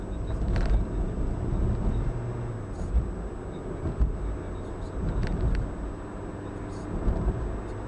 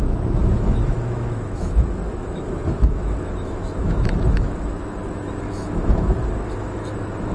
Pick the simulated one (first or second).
second